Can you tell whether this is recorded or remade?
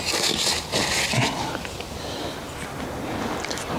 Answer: recorded